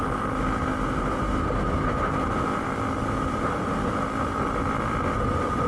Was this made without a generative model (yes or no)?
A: yes